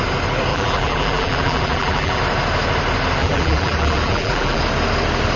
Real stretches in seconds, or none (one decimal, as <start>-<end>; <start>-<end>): 0.0-0.5; 2.2-3.2; 4.6-5.4